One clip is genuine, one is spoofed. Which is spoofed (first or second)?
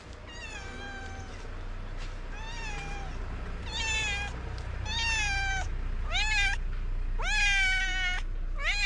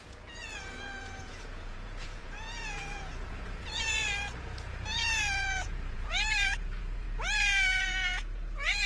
second